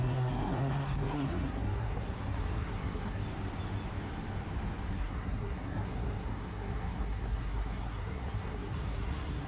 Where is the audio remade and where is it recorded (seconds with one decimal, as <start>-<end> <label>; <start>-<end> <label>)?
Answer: 0.0-3.2 remade; 3.2-4.9 recorded; 4.9-9.5 remade